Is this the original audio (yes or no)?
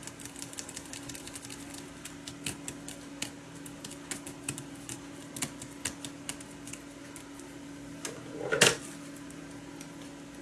yes